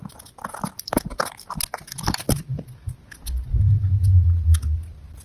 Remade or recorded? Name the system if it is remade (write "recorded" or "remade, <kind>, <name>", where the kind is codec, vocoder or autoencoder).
recorded